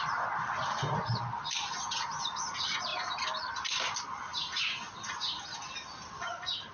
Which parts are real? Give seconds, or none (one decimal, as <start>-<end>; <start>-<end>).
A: 0.0-2.9; 3.5-6.7